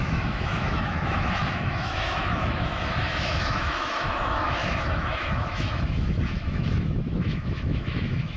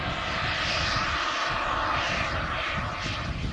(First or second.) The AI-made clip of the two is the first